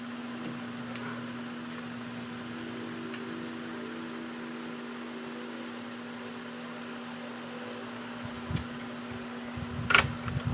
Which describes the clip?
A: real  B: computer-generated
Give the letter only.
A